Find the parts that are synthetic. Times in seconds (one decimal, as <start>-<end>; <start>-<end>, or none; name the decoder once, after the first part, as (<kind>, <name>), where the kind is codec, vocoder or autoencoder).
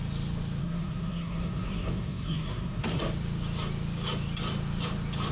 0.6-3.0 (codec, SNAC)